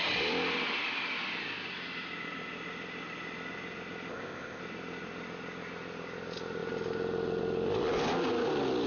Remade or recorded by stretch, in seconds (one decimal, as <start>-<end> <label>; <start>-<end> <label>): 0.0-4.1 recorded; 4.1-4.6 remade; 4.6-8.9 recorded